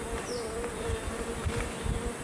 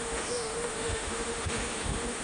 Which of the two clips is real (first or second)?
first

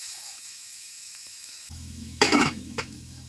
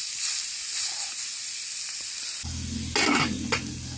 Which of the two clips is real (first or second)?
second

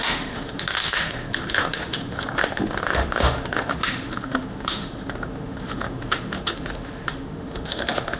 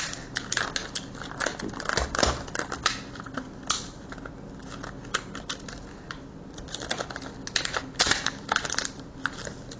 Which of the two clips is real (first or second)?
second